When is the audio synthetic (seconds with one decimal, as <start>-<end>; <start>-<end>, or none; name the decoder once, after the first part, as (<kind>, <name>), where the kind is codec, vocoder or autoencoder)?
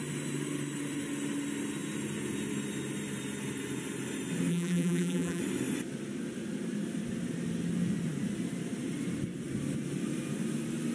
4.5-5.4 (vocoder, BigVGAN v2)